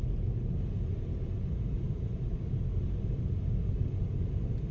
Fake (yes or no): no